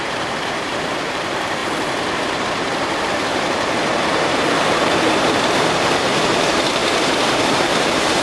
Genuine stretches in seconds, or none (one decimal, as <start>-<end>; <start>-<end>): none